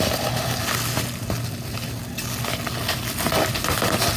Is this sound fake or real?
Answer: real